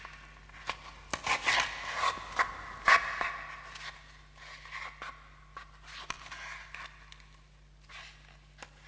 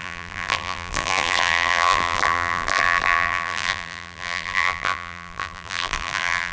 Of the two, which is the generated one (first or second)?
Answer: second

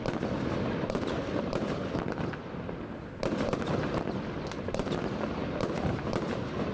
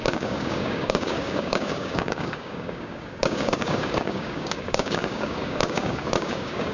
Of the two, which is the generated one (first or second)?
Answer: second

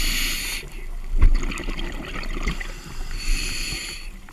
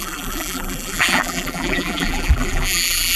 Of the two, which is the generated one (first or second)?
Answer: second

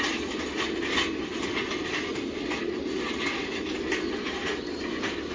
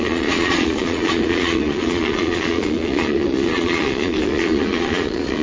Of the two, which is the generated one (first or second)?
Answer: second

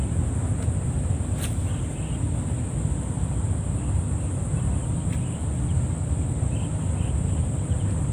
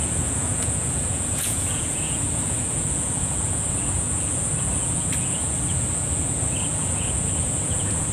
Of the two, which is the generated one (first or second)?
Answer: second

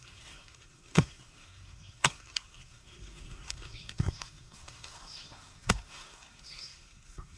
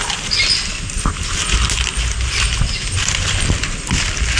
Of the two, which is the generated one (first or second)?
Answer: first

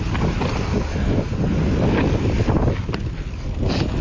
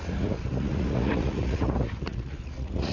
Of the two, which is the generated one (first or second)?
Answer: second